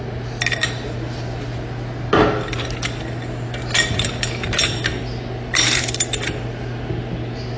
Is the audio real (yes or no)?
yes